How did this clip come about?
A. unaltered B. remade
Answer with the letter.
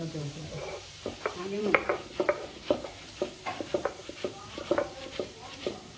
B